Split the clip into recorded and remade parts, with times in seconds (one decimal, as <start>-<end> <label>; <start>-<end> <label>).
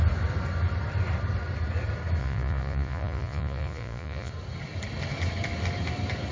0.0-2.2 recorded; 2.2-4.3 remade; 4.3-6.3 recorded